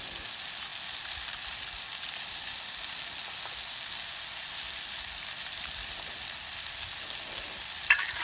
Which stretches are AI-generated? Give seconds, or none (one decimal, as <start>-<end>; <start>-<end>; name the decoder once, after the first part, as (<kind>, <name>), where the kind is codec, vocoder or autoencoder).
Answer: 0.7-3.4 (vocoder, BigVGAN v2); 4.3-8.2